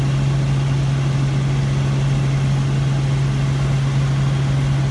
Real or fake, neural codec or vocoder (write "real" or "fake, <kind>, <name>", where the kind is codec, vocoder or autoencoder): real